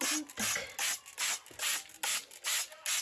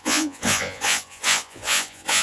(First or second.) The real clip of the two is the first